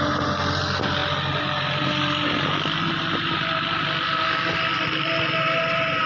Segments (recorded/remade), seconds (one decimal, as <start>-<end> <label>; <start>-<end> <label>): 0.0-6.1 recorded